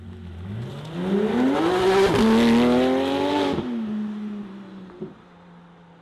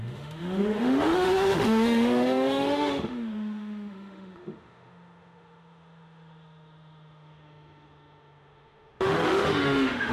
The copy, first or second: second